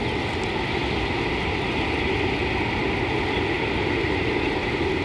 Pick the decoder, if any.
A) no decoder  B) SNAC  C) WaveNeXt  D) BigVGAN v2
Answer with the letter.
A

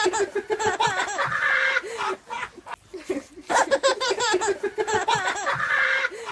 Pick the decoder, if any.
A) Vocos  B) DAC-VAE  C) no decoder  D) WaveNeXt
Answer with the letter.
C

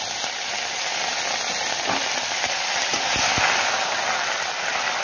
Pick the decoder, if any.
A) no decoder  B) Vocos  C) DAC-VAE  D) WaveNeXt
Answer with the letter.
A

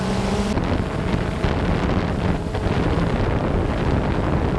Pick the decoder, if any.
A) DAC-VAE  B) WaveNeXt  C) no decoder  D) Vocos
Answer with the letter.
C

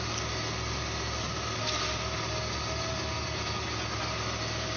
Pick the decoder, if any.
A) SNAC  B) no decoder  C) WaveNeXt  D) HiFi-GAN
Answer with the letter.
B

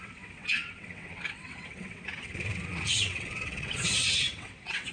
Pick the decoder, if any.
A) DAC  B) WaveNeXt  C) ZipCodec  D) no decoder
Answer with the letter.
B